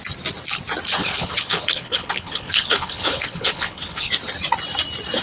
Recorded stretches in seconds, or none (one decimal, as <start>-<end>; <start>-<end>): 0.0-1.0; 4.1-5.2